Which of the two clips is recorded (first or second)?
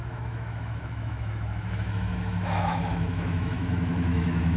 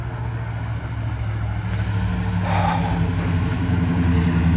second